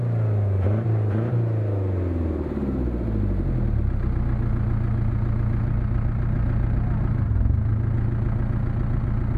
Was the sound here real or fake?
real